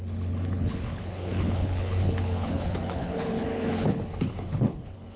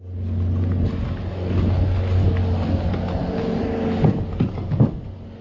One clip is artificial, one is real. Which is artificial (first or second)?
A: first